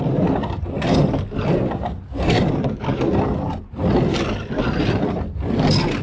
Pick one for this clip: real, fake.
real